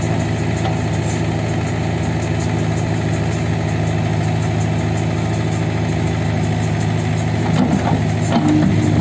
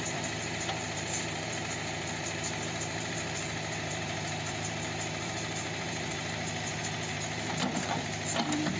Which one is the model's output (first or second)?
second